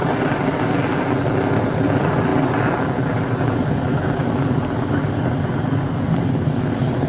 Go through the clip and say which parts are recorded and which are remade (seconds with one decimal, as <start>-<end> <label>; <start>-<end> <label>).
0.0-2.3 remade; 2.3-6.3 recorded; 6.3-7.1 remade